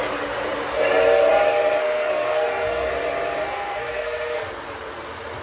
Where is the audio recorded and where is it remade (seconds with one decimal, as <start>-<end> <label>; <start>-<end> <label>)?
0.0-1.8 recorded; 1.8-2.9 remade; 2.9-3.4 recorded; 3.4-4.4 remade; 4.4-5.4 recorded